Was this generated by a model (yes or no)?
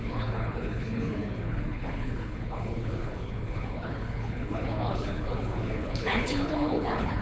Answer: yes